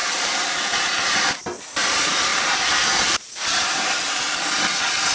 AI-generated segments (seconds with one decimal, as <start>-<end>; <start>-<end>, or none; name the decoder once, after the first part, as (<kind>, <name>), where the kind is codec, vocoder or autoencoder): 0.0-0.9 (vocoder, BigVGAN v2); 2.3-4.2